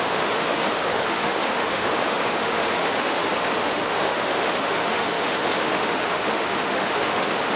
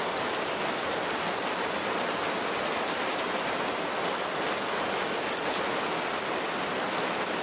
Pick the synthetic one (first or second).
first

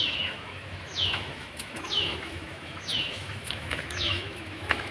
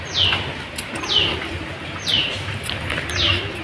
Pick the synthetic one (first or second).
first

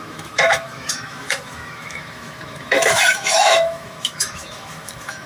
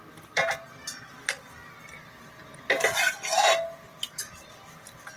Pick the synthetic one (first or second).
first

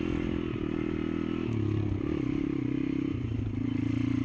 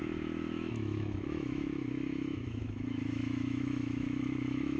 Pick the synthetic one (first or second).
second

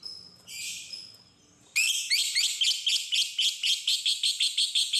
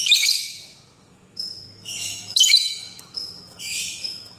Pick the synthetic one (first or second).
second